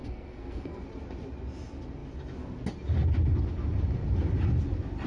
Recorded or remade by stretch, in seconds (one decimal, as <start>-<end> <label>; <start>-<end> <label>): 0.0-0.8 remade; 0.8-5.1 recorded